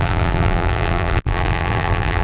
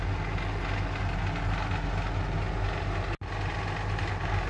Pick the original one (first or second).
second